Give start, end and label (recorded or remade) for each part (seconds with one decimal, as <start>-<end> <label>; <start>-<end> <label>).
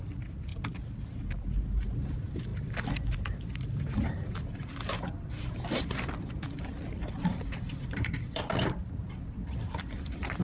0.0-0.5 remade; 0.5-2.0 recorded; 2.0-10.4 remade